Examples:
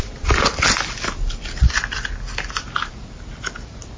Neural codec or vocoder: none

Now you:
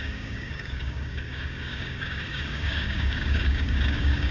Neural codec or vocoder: codec, DAC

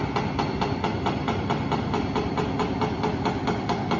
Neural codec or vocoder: none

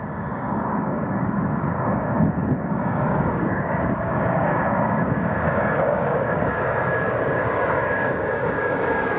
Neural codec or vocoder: codec, DAC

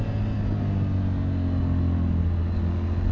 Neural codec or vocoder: none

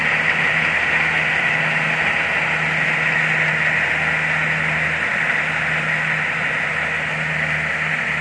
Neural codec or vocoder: none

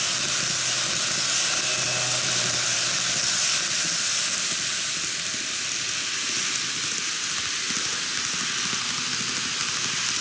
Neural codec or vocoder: none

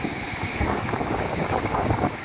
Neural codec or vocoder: codec, DAC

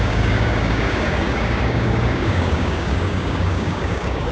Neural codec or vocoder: codec, DAC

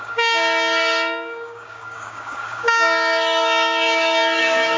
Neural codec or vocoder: codec, DAC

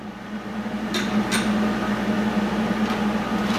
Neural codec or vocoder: none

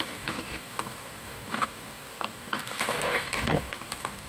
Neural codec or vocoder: codec, DAC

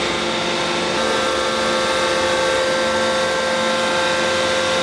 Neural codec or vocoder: none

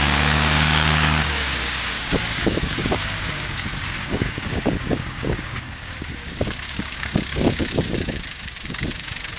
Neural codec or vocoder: codec, DAC